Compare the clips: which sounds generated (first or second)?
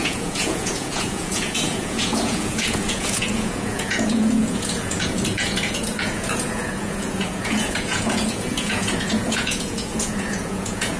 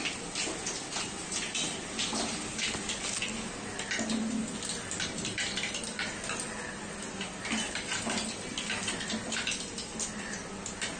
first